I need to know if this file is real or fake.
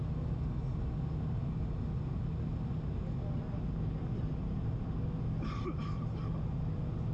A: real